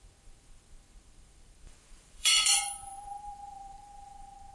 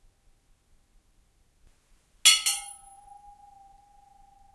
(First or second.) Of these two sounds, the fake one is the first